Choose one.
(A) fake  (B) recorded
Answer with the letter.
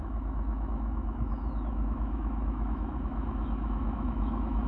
A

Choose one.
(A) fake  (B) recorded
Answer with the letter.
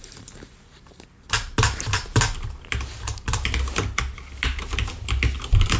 B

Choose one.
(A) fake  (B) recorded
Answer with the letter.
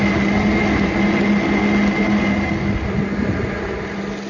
B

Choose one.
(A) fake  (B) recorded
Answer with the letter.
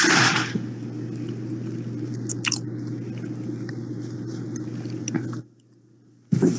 B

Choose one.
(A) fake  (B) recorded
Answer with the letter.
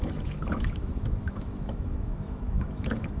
A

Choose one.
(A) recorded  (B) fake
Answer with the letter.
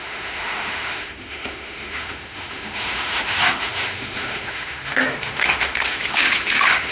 B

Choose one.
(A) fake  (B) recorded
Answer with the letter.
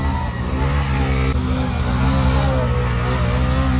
B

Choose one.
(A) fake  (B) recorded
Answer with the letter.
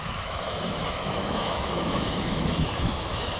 A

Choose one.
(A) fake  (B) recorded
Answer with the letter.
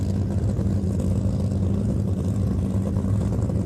B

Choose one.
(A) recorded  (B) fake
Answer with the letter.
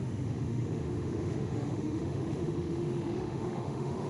B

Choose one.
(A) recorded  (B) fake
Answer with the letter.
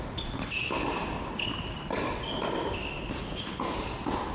A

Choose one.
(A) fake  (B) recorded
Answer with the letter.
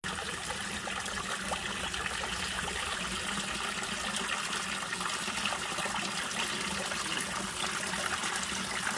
B